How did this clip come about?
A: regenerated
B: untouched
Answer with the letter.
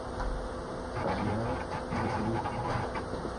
B